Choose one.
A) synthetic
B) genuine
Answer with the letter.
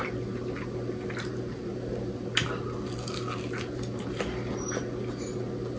B